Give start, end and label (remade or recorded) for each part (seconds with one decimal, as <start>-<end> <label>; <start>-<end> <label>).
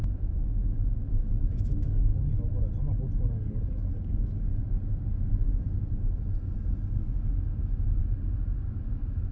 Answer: 0.0-2.1 remade; 2.1-3.9 recorded; 3.9-4.6 remade; 4.6-7.6 recorded; 7.6-8.0 remade; 8.0-8.8 recorded; 8.8-9.3 remade